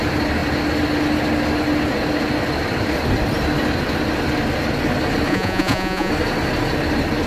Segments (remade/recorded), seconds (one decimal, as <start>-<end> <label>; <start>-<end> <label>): 0.0-5.3 recorded; 5.3-6.1 remade; 6.1-7.3 recorded